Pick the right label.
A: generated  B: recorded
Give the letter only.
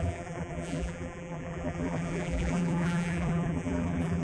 A